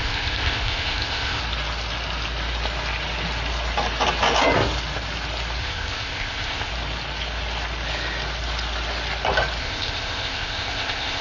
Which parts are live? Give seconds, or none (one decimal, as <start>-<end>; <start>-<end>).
1.4-5.6; 6.7-9.6